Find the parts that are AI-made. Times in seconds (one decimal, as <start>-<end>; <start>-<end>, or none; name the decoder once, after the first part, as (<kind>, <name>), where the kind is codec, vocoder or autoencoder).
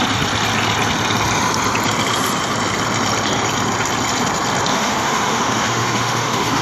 4.7-6.6 (autoencoder, DAC-VAE)